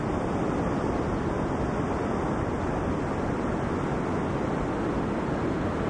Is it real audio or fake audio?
real